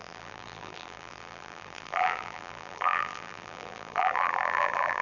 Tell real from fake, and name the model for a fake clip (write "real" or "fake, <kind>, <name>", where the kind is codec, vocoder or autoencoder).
fake, vocoder, BigVGAN v2